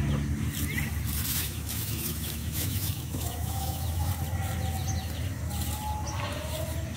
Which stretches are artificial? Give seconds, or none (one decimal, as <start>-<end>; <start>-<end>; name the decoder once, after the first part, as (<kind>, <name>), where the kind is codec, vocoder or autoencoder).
1.3-4.1 (autoencoder, DAC-VAE)